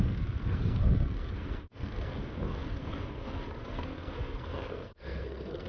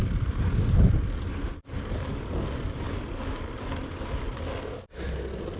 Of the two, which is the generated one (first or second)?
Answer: first